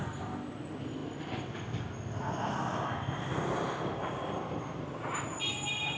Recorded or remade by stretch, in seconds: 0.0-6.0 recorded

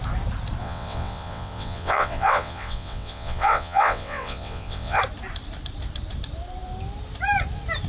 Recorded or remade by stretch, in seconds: 0.0-0.6 recorded; 0.6-5.0 remade; 5.0-7.9 recorded